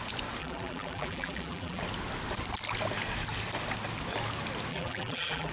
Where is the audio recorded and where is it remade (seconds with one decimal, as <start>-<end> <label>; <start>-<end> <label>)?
0.0-0.4 recorded; 0.4-1.8 remade; 1.8-4.7 recorded; 4.7-5.5 remade